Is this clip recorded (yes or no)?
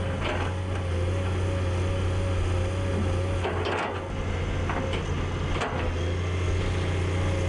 yes